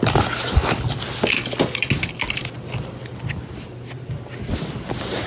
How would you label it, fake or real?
real